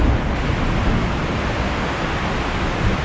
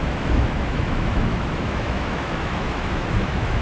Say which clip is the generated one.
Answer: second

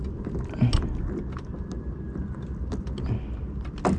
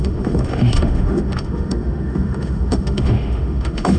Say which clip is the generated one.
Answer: second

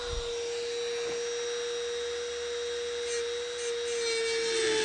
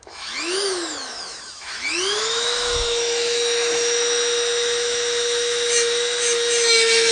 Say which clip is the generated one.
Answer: second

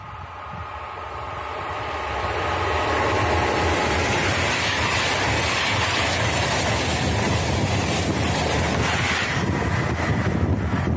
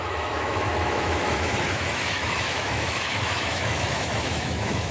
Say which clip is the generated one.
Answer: second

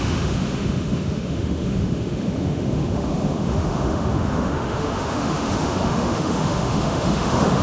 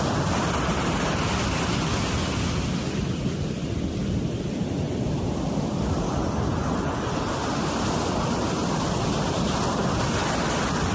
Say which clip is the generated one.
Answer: first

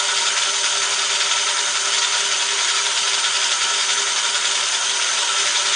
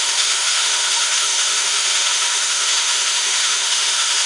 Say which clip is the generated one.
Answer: second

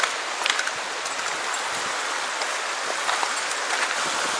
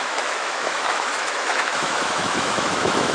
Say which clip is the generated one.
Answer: second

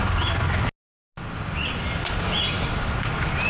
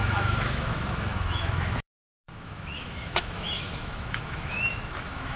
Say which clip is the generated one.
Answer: second